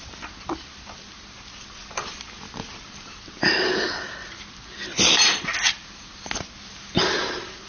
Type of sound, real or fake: real